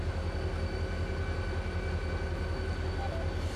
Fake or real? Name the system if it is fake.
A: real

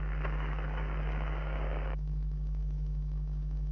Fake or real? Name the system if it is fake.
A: fake, codec, DAC